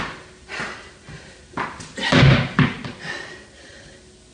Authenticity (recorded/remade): recorded